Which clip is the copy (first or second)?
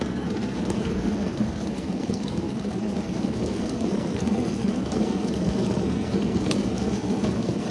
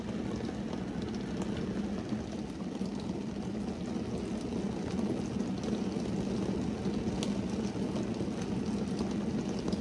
first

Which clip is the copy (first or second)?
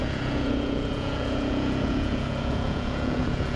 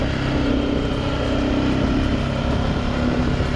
first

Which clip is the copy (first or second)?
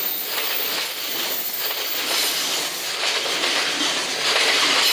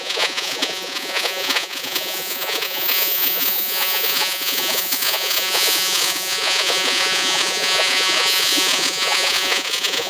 second